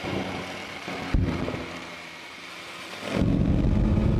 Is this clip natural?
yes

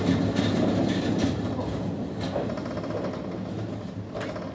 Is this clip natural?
yes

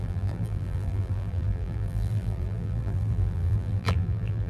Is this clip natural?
no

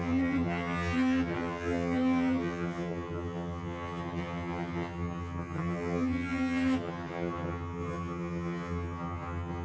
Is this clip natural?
no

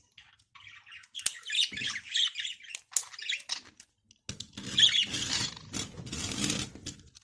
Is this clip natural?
yes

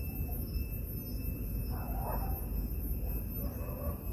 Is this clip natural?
yes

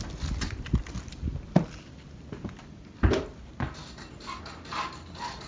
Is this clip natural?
yes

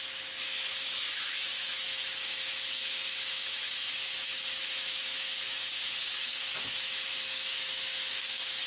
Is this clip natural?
no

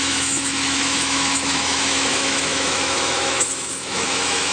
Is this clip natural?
no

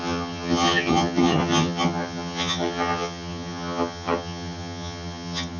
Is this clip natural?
no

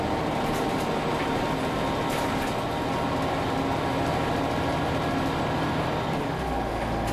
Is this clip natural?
yes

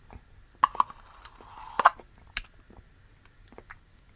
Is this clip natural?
yes